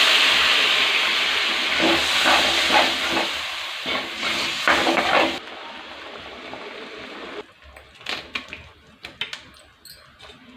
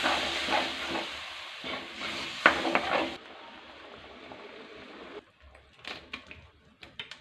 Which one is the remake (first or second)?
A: second